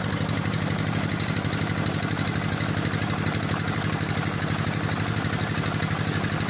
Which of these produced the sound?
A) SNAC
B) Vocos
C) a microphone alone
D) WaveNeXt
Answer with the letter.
C